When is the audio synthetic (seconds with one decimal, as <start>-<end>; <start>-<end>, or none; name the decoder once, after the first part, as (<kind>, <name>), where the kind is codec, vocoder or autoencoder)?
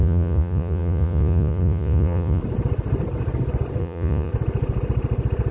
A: 0.0-2.4 (vocoder, Vocos); 3.8-4.3